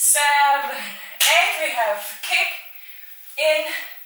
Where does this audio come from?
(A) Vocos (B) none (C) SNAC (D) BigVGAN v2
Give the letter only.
D